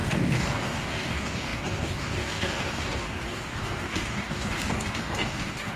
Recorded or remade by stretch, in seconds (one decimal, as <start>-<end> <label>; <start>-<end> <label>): 0.0-5.8 remade